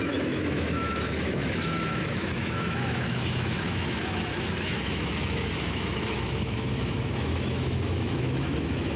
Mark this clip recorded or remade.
remade